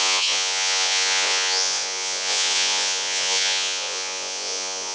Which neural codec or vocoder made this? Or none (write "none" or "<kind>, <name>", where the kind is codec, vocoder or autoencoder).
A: vocoder, Vocos